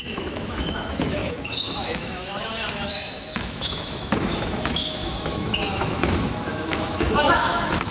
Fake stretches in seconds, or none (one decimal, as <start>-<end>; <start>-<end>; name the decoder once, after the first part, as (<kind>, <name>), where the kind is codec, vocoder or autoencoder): 0.0-7.9 (autoencoder, DAC-VAE)